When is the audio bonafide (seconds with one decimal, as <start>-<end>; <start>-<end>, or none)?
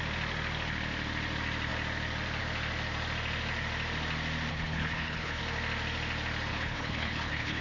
0.0-4.5; 5.4-6.5